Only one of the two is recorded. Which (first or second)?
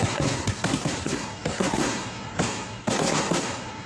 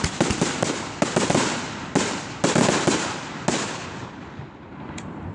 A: second